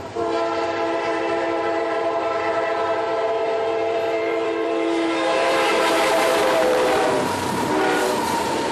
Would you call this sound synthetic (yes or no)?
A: yes